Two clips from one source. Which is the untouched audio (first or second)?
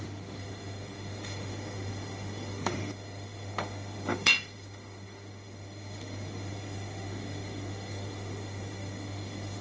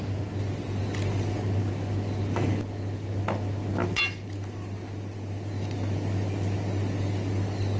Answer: second